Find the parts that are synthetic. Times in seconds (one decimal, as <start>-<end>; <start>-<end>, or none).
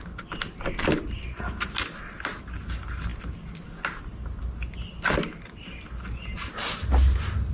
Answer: none